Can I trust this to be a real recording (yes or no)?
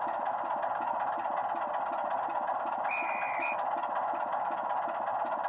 yes